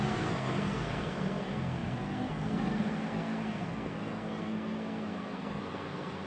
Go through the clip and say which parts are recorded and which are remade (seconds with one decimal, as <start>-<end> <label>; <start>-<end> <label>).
0.0-6.3 remade